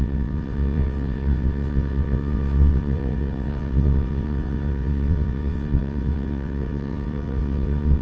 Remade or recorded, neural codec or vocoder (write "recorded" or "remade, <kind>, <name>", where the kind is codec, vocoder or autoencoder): remade, vocoder, WaveNeXt